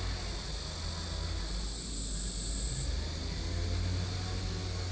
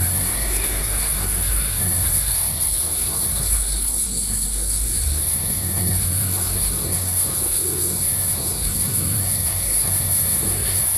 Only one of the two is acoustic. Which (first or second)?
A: first